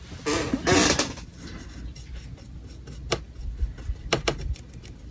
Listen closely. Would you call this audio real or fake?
real